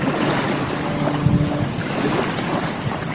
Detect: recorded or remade recorded